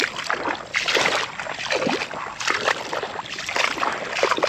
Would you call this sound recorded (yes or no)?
yes